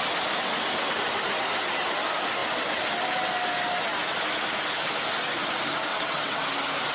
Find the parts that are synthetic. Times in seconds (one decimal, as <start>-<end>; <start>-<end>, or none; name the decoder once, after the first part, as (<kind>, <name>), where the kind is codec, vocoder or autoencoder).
5.9-6.4 (vocoder, WaveNeXt)